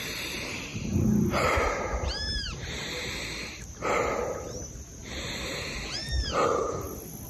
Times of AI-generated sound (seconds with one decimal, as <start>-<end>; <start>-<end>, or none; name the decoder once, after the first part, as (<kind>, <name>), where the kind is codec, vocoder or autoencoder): none